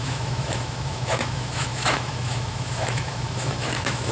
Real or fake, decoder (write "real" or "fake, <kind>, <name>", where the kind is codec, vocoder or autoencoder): fake, autoencoder, DAC-VAE